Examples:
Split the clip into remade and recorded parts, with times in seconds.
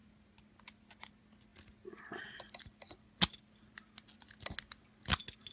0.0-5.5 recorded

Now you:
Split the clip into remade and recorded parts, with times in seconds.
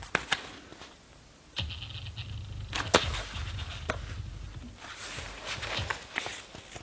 0.0-6.8 recorded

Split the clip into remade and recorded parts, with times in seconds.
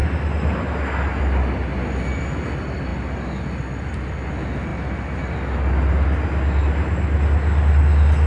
0.0-8.3 recorded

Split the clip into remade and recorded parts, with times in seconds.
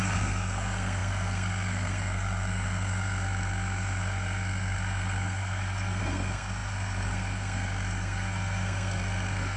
0.0-9.6 remade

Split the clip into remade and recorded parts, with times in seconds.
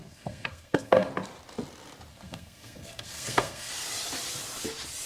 0.0-1.1 remade; 1.1-2.1 recorded; 2.1-3.7 remade; 3.7-5.1 recorded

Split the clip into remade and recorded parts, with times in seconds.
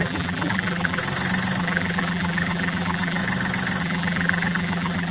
0.0-1.0 remade; 1.0-1.6 recorded; 1.6-3.2 remade; 3.2-3.8 recorded; 3.8-5.1 remade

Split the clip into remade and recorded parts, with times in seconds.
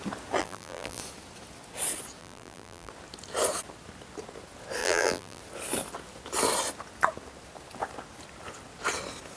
0.0-0.4 recorded; 0.4-1.0 remade; 1.0-2.2 recorded; 2.2-2.9 remade; 2.9-4.8 recorded; 4.8-5.4 remade; 5.4-9.4 recorded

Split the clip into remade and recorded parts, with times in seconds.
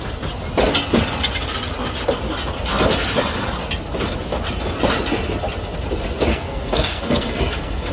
0.0-6.3 recorded; 6.3-7.9 remade